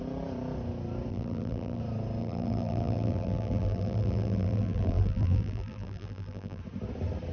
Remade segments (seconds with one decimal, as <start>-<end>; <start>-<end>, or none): 1.1-1.8; 2.2-6.6